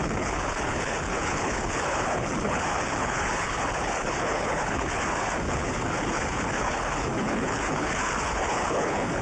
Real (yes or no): no